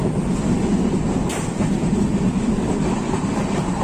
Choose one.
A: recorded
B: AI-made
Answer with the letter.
A